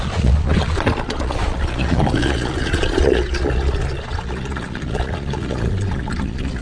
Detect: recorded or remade remade